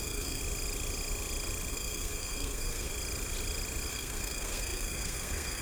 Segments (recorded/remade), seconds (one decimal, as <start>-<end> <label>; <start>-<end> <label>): 0.0-0.4 remade; 0.4-1.7 recorded; 1.7-2.9 remade; 2.9-3.9 recorded; 3.9-5.6 remade

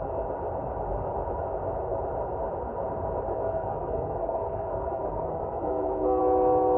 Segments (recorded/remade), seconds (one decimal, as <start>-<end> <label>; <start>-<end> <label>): 0.0-3.3 recorded; 3.3-6.2 remade; 6.2-6.8 recorded

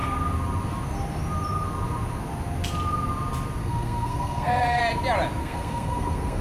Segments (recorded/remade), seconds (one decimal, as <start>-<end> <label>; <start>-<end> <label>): 0.0-3.6 recorded; 3.6-4.8 remade; 4.8-5.4 recorded; 5.4-6.4 remade

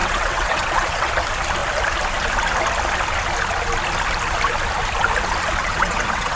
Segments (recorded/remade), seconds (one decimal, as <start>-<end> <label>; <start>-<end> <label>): 0.0-1.1 remade; 1.1-5.6 recorded; 5.6-6.4 remade

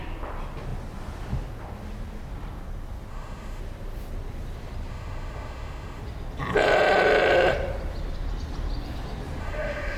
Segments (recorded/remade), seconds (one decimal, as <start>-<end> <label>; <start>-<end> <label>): 0.0-3.1 recorded; 3.1-3.6 remade; 3.6-4.9 recorded; 4.9-6.0 remade; 6.0-9.4 recorded; 9.4-10.0 remade

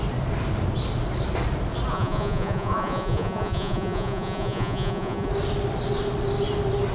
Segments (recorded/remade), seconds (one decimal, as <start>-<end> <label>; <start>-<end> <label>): 0.0-1.9 recorded; 1.9-5.3 remade; 5.3-6.9 recorded

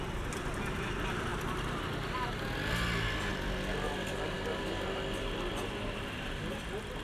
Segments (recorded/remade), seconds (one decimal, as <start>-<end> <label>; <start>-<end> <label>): 0.0-7.0 recorded